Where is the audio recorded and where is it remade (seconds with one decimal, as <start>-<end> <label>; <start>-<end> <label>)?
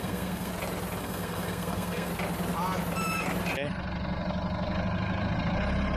0.0-0.5 remade; 0.5-1.0 recorded; 1.0-2.1 remade; 2.1-6.0 recorded